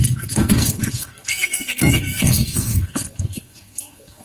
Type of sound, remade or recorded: remade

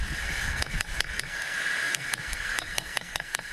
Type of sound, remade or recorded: remade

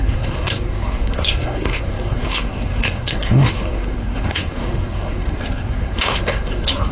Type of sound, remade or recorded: remade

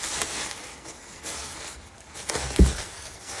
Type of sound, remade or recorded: remade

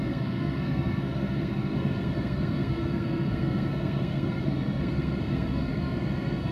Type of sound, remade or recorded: remade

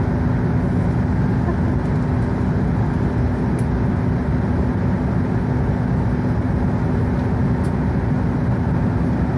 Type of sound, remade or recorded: recorded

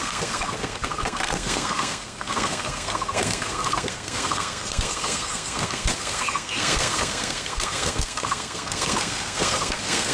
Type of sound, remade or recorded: remade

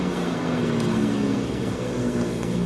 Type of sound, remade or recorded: remade